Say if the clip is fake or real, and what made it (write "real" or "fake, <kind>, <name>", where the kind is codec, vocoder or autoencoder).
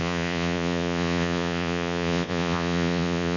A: fake, vocoder, Vocos